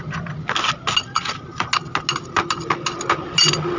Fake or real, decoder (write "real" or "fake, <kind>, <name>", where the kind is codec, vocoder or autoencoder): real